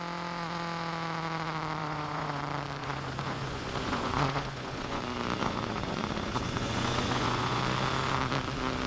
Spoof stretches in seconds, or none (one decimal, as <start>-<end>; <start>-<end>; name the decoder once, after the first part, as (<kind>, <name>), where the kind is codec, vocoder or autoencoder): 1.8-2.4 (vocoder, Vocos); 2.8-5.0; 5.4-7.6